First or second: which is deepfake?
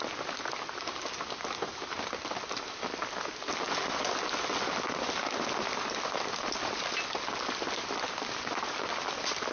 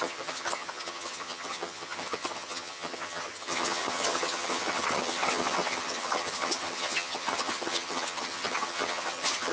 second